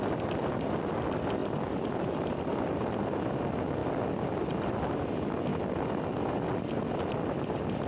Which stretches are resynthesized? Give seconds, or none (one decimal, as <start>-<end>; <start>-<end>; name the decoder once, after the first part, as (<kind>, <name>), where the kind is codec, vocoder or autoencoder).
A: none